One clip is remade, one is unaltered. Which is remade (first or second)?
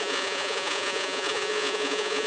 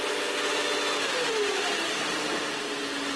first